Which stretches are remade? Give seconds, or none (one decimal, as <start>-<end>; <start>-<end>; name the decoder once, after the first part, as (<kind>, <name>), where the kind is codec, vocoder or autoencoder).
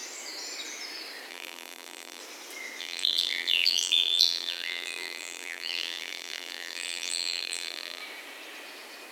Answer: 1.3-2.2 (vocoder, BigVGAN v2); 2.8-8.0